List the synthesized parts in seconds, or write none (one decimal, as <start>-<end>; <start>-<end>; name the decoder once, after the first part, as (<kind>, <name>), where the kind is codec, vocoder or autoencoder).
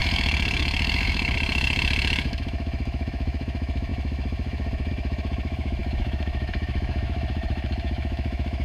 0.0-8.6 (autoencoder, DAC-VAE)